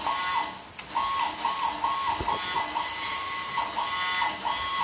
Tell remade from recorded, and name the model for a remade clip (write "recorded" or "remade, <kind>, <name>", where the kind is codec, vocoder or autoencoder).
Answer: recorded